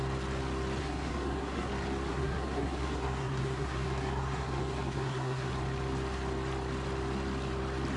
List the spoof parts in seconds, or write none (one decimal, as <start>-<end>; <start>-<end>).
0.8-1.7; 2.1-5.5